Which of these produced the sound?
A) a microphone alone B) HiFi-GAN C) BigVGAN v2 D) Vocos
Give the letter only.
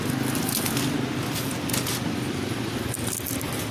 A